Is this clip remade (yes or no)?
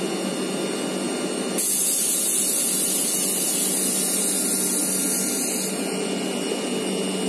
no